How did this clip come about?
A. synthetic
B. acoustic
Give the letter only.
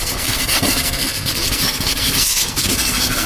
A